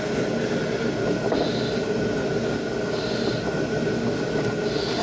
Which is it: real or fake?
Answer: real